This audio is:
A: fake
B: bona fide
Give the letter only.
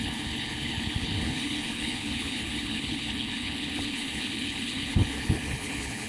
A